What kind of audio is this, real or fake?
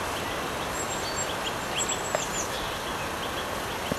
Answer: real